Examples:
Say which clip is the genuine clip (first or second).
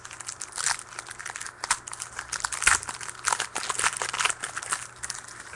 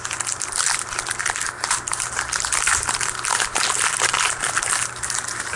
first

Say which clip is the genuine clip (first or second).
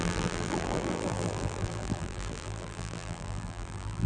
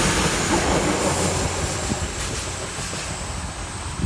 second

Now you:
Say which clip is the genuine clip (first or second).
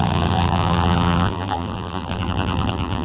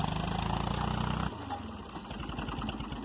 second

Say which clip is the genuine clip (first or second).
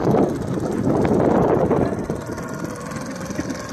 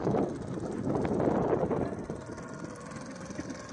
second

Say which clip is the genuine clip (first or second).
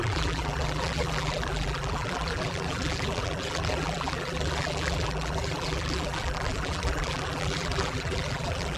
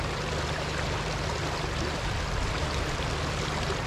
second